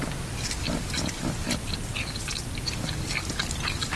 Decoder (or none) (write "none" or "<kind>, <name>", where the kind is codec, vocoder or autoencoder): none